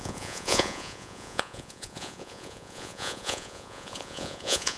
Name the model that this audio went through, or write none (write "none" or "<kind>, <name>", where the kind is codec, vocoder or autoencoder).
vocoder, Vocos